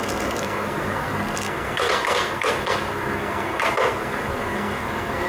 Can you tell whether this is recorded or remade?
remade